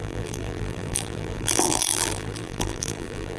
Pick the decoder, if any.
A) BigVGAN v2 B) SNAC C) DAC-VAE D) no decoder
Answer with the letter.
A